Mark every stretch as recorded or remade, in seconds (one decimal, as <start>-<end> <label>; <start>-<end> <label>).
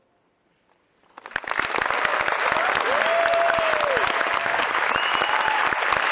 0.0-4.4 recorded; 4.4-4.9 remade; 4.9-6.1 recorded